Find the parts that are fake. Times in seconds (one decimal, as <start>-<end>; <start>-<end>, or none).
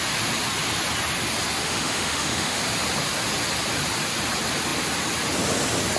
1.6-2.6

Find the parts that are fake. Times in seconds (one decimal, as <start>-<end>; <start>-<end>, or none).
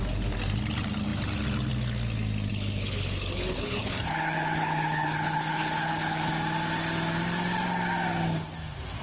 2.5-6.3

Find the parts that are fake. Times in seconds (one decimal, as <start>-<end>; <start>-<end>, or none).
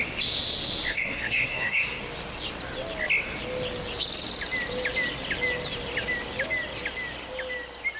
0.9-2.0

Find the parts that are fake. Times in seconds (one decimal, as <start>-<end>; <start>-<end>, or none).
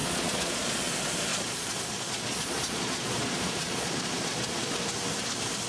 0.0-0.9; 1.3-4.7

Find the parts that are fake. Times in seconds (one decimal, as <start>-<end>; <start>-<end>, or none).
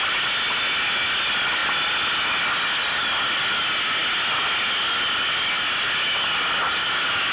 none